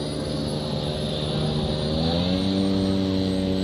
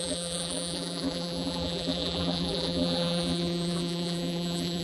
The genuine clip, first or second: first